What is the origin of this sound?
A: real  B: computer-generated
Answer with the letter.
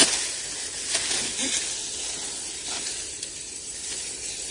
A